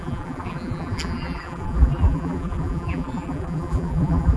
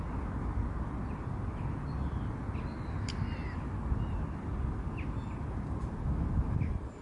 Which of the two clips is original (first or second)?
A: second